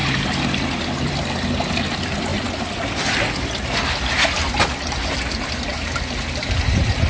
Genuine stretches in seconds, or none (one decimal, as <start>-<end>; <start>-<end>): 1.2-2.3; 3.4-7.1